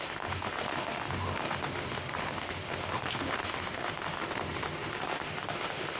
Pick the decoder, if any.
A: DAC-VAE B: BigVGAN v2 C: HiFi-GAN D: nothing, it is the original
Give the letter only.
A